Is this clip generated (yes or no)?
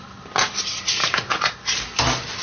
no